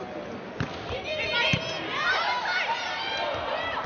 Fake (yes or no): no